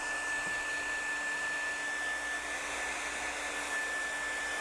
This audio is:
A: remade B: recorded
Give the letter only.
B